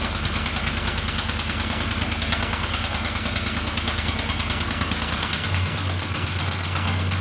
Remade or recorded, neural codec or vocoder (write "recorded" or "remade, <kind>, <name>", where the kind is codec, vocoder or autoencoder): remade, codec, SNAC